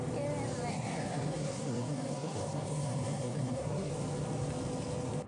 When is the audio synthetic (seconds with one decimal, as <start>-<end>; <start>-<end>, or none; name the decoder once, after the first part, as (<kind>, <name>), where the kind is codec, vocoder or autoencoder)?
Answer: 0.7-3.9 (codec, SNAC)